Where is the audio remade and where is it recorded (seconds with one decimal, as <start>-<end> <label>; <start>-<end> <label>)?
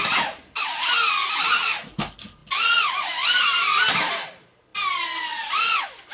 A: 0.0-6.1 recorded